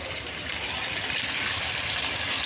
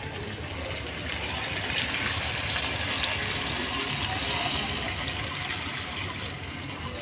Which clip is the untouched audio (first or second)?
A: second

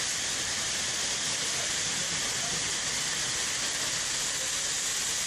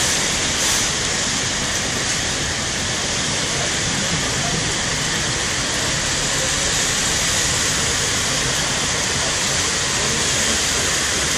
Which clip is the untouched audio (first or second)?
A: first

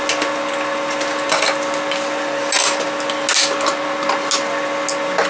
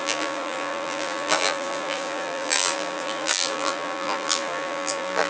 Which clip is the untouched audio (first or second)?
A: first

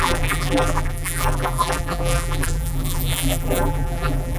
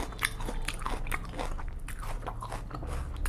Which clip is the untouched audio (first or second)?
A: second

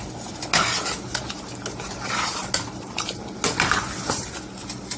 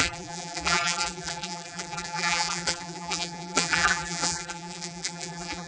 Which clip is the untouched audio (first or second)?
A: first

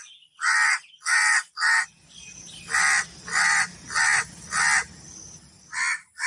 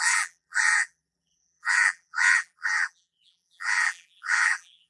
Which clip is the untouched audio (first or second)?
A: first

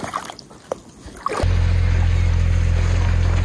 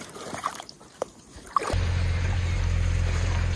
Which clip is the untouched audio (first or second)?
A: first